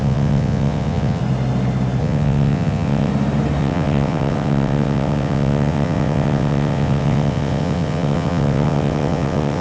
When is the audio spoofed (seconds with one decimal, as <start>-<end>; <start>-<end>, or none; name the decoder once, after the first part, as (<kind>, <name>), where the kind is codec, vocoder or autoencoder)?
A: 0.0-1.2 (vocoder, WaveNeXt); 2.0-3.1; 3.6-9.6